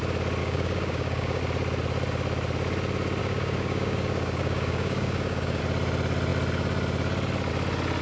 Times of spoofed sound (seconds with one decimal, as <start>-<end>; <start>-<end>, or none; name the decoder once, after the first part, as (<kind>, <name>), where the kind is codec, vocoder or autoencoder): 0.4-1.4 (codec, DAC); 3.2-5.6

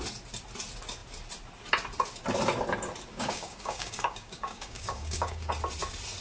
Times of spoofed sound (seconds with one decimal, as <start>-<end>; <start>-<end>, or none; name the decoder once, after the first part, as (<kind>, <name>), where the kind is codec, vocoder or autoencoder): 3.1-5.5 (codec, DAC)

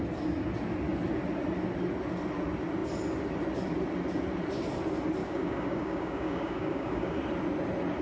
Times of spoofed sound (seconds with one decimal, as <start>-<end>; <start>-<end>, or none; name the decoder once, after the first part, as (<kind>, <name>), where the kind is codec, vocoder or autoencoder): 5.2-7.2 (codec, DAC)

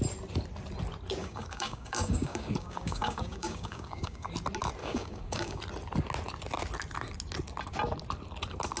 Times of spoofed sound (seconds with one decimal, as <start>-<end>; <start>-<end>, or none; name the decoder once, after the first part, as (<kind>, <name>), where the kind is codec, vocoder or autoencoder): 1.2-4.3 (codec, DAC); 4.8-5.6